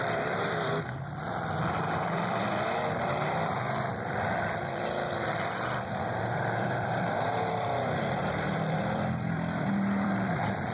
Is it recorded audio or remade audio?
remade